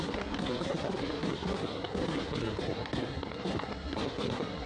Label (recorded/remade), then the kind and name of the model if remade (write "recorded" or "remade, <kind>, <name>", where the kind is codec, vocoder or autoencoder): remade, codec, SNAC